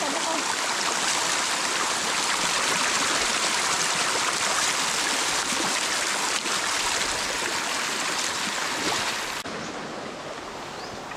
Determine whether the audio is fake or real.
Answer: real